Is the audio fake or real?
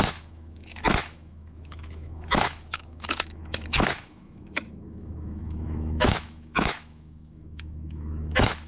fake